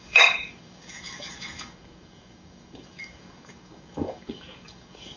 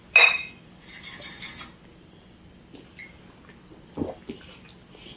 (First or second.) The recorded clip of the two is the second